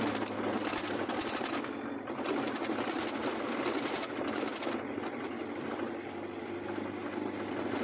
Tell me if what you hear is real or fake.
real